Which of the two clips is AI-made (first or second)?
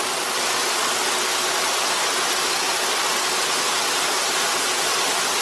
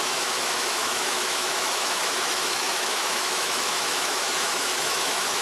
second